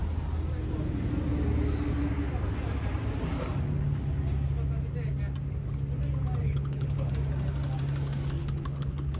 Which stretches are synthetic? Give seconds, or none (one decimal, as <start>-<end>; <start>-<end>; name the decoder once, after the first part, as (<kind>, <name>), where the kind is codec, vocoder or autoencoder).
6.4-7.1 (codec, HILCodec); 8.4-9.2